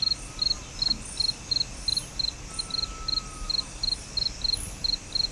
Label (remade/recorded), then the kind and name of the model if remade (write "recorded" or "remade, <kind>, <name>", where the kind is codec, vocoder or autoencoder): recorded